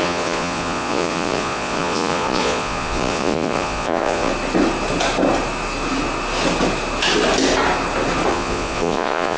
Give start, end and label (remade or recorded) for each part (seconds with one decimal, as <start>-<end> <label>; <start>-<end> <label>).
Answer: 0.0-4.3 remade; 4.3-8.3 recorded; 8.3-9.4 remade